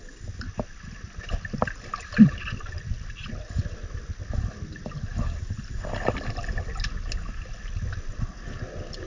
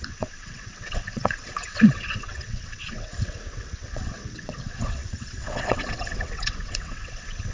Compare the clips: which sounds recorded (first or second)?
first